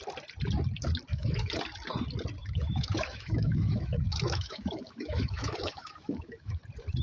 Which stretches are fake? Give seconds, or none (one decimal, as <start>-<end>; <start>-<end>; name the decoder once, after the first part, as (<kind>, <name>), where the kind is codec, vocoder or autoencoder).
1.1-1.6 (autoencoder, DAC-VAE); 2.4-6.6